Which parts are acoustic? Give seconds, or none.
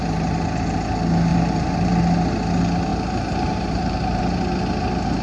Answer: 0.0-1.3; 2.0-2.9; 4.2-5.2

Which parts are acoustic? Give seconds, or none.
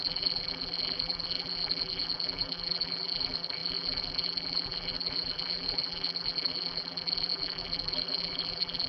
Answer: none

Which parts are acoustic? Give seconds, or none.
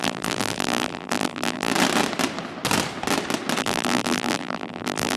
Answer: 1.7-3.6